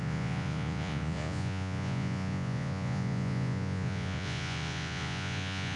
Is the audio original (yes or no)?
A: no